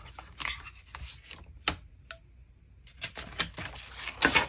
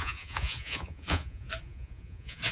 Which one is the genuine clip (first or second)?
first